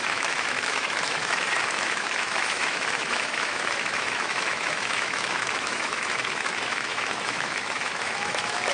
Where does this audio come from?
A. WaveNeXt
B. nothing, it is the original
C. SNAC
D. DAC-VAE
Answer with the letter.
D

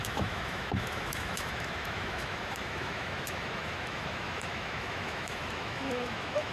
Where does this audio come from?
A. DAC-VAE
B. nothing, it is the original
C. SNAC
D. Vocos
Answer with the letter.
A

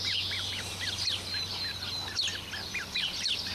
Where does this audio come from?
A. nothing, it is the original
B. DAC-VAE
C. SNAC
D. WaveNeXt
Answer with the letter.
A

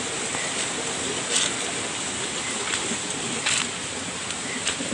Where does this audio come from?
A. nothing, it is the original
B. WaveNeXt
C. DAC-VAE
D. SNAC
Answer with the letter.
A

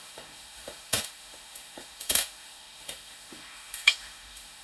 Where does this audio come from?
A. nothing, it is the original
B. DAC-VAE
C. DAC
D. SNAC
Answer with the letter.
B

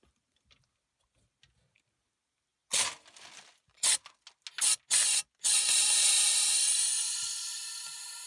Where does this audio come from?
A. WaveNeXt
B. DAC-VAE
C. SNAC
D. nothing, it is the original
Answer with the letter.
D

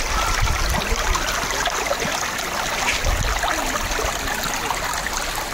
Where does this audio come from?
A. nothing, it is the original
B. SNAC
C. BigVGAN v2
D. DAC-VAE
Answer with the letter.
A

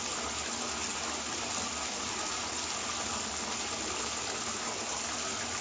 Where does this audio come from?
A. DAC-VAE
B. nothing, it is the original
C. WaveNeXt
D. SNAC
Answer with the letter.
B